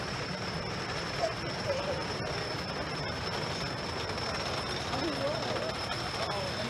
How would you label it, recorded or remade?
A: recorded